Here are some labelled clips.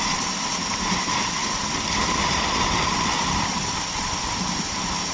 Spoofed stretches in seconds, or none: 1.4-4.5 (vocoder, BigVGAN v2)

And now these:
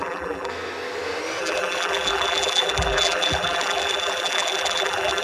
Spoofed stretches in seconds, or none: 0.0-0.5 (vocoder, BigVGAN v2); 1.4-5.2

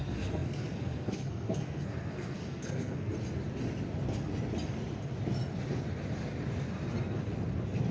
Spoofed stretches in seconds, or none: 0.0-3.1 (codec, SNAC)

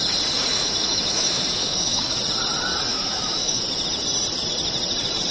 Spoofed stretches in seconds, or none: 0.5-2.0 (autoencoder, DAC-VAE); 2.9-3.6

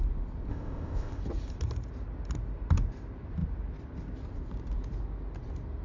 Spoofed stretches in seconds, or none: 0.5-1.2 (codec, ZipCodec)

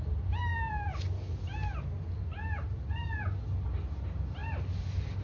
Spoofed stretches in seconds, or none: 4.4-5.2 (vocoder, BigVGAN v2)

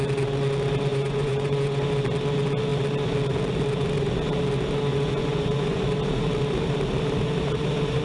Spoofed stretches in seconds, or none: 0.9-1.8 (vocoder, Vocos); 4.9-5.8

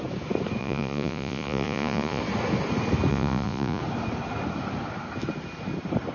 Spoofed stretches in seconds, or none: 0.6-2.2 (vocoder, Vocos); 3.1-3.8